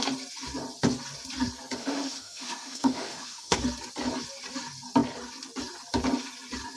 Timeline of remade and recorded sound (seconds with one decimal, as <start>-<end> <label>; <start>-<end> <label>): 0.0-1.8 recorded; 1.8-3.6 remade; 3.6-6.8 recorded